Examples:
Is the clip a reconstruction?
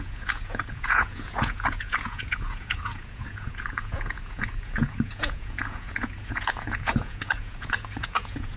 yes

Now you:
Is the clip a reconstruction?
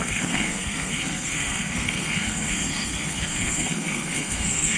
yes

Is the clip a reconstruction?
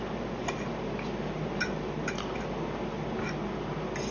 no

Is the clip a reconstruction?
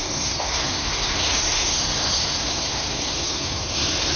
yes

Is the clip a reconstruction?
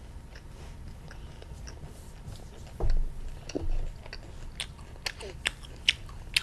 no